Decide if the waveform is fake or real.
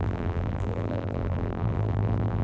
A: fake